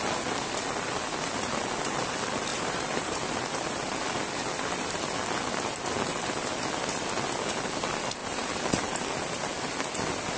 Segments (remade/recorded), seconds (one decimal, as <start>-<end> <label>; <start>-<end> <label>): 0.0-2.5 recorded; 2.5-3.2 remade; 3.2-10.4 recorded